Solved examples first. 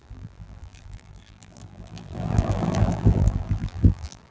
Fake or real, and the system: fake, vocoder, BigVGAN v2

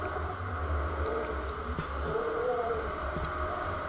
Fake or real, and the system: real